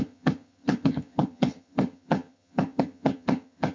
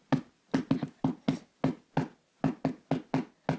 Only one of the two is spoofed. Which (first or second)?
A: first